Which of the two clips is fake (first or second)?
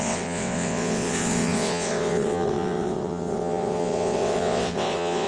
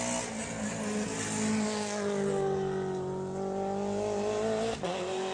first